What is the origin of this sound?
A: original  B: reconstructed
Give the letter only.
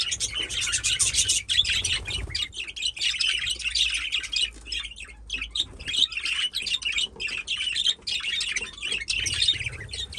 A